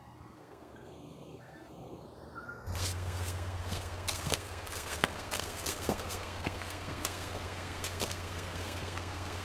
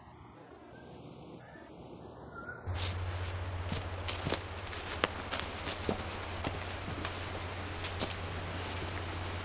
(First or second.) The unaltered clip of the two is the second